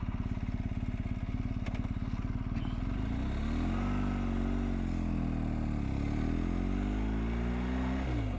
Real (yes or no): yes